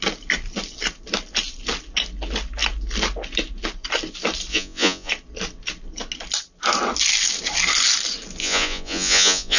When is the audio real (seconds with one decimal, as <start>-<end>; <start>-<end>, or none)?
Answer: 0.0-4.5; 5.1-8.4